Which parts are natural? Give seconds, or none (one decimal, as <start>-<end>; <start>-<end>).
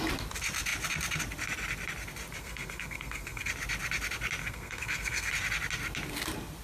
0.0-2.4; 3.5-4.4; 5.3-6.6